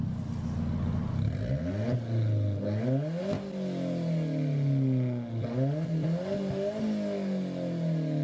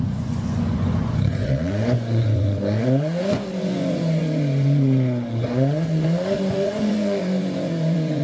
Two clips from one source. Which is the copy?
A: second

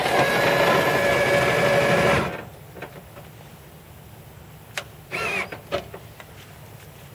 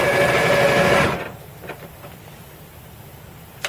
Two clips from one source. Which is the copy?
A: second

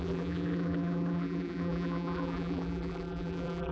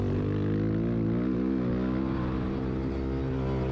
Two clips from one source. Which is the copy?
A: first